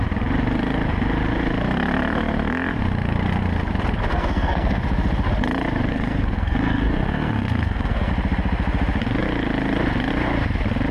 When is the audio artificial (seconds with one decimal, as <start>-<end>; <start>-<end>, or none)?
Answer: 4.1-4.8; 5.9-8.1